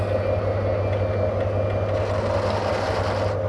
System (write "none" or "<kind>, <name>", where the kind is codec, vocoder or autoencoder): none